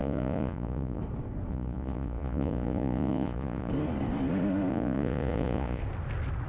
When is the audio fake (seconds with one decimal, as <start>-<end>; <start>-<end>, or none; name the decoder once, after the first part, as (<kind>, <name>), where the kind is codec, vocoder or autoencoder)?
0.0-1.0 (vocoder, Vocos); 1.5-3.7; 4.7-5.8